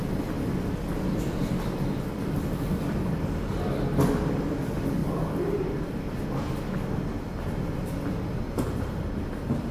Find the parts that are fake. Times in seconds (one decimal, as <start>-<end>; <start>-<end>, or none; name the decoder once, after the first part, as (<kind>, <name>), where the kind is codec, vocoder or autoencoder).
0.0-5.0 (vocoder, BigVGAN v2); 8.4-9.7